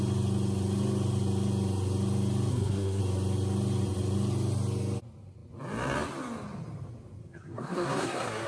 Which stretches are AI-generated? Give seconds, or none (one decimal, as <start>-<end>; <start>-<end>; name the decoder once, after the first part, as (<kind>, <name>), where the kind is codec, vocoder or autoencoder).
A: 2.5-3.0 (codec, SNAC); 7.2-8.5